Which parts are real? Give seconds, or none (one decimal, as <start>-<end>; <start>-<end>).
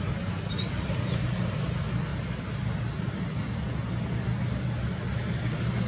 0.0-5.9